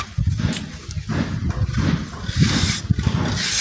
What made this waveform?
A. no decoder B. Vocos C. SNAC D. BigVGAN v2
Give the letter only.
A